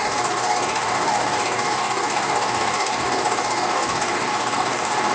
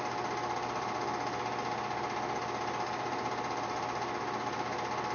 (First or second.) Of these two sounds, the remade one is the first